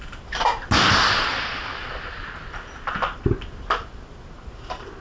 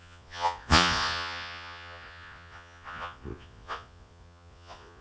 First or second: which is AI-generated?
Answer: second